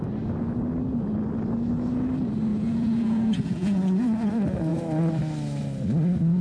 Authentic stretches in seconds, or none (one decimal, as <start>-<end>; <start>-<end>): 0.0-2.5; 4.3-6.4